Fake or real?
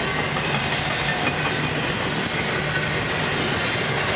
real